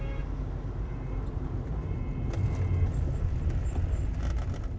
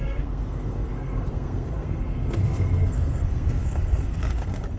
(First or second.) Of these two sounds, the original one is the first